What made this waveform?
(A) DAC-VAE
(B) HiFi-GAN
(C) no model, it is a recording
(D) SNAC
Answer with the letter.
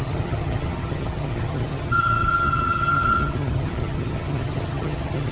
B